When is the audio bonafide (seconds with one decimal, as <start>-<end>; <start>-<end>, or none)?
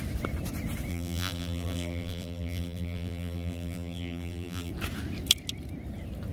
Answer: 0.0-0.9; 4.7-6.3